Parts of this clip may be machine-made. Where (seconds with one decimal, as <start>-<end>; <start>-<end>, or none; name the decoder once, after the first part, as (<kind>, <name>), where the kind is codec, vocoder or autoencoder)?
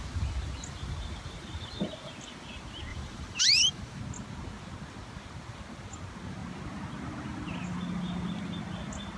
2.9-4.0 (vocoder, BigVGAN v2)